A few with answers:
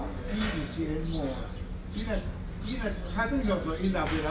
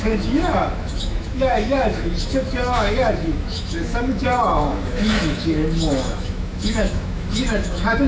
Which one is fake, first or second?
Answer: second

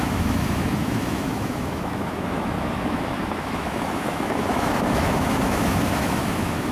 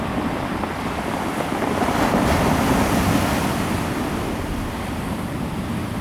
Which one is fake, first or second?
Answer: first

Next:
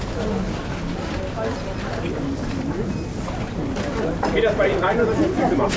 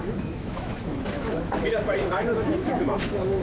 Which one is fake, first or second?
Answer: second